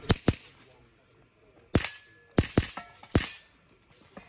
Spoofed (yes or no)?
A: no